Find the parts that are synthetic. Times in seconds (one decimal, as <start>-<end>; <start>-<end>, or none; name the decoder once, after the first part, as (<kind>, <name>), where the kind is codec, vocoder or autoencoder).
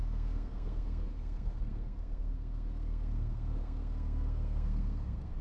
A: 0.0-5.4 (codec, SNAC)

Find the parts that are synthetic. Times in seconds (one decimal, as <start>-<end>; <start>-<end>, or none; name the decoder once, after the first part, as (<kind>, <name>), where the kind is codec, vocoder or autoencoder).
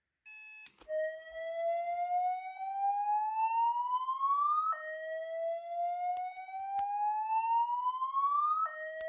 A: none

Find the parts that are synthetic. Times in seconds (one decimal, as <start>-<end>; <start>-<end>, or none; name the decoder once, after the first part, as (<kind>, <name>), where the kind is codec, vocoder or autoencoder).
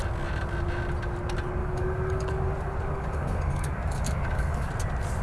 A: 1.6-4.7 (codec, DAC)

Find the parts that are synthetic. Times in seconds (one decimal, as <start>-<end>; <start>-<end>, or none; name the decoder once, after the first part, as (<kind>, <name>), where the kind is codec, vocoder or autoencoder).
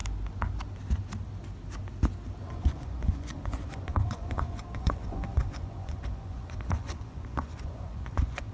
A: 2.4-8.5 (vocoder, Vocos)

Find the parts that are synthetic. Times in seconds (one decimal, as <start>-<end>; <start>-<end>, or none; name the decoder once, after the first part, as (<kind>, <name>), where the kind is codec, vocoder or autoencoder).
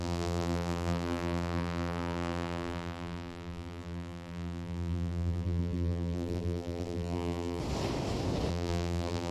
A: 0.0-7.6 (vocoder, BigVGAN v2); 8.5-9.3